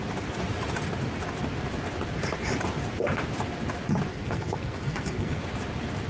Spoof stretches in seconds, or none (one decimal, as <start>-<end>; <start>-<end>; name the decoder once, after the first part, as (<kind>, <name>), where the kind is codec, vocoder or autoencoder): 4.1-5.4 (codec, SNAC)